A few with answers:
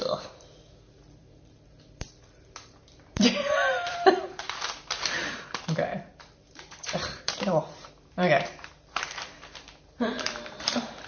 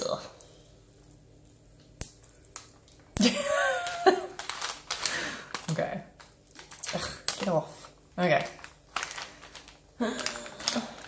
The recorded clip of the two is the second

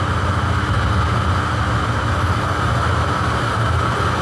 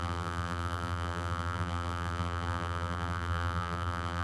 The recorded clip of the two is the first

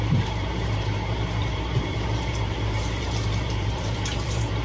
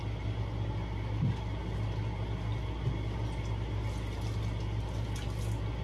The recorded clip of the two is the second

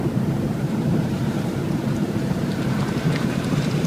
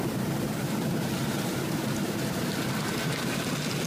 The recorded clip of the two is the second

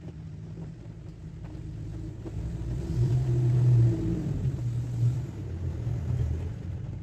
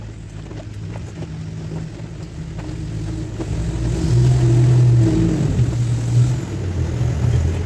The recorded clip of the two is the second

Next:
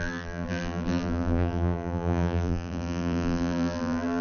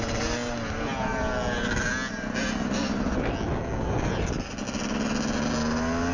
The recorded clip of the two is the second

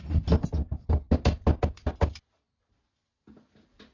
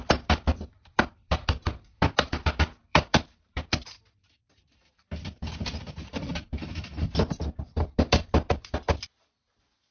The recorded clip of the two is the first